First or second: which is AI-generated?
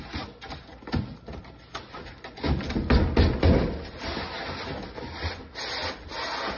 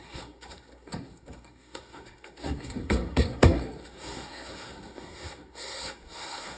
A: second